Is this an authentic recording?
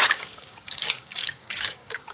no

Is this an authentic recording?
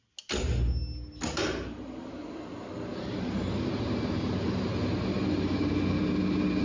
yes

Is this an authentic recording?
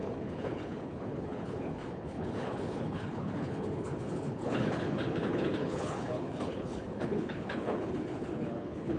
no